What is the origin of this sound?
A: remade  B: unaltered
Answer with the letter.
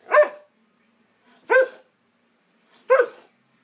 B